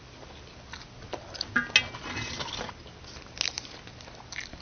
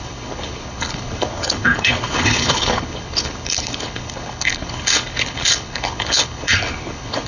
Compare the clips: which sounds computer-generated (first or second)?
second